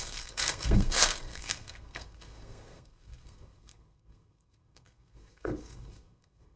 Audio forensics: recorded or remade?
remade